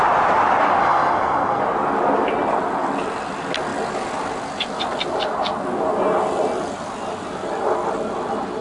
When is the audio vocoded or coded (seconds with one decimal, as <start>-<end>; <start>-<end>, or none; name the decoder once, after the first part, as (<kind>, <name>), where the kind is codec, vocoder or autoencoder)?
0.8-1.6 (codec, SNAC)